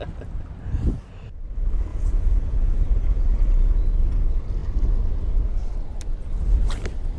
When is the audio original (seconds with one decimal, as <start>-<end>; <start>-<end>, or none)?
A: 0.0-1.9; 2.9-7.2

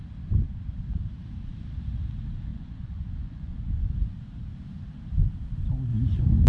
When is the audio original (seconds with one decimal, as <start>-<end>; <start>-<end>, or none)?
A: 0.0-2.5; 4.2-5.9